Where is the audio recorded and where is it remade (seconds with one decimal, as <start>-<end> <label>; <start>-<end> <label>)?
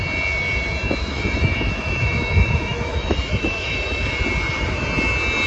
0.0-1.1 recorded; 1.1-4.1 remade; 4.1-5.5 recorded